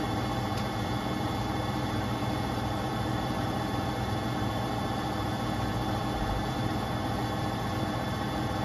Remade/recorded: remade